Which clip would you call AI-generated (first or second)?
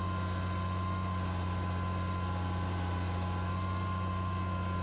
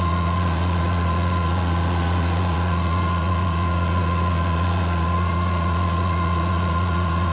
second